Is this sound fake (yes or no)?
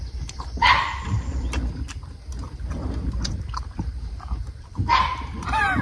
yes